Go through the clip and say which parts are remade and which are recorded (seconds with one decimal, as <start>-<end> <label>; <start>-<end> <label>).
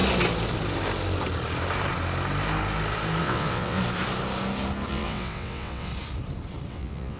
0.0-3.2 recorded; 3.2-3.8 remade; 3.8-4.9 recorded; 4.9-5.9 remade; 5.9-6.7 recorded; 6.7-7.2 remade